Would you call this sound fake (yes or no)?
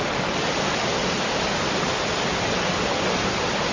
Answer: no